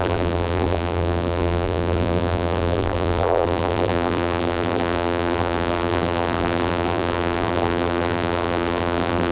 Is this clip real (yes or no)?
no